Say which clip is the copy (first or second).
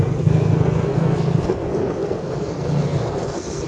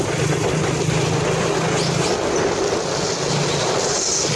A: first